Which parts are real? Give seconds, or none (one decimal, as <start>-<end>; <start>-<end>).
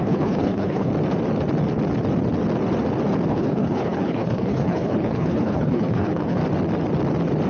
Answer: 0.9-3.3; 6.4-7.5